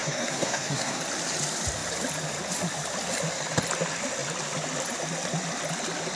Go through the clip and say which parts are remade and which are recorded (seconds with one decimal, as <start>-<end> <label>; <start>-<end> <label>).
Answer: 0.0-1.0 remade; 1.0-6.2 recorded